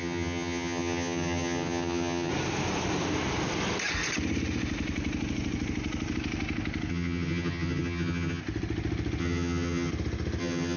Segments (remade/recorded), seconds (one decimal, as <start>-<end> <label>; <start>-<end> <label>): 0.0-2.3 remade; 2.3-6.9 recorded; 6.9-8.4 remade; 8.4-9.2 recorded; 9.2-9.9 remade; 9.9-10.4 recorded; 10.4-10.8 remade